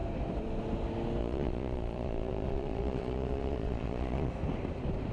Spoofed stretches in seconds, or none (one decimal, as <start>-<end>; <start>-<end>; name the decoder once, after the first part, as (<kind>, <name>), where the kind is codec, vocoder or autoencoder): 1.2-4.3 (vocoder, Vocos)